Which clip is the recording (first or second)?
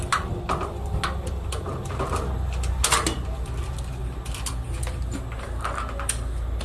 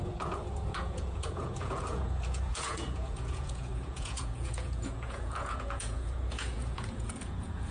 first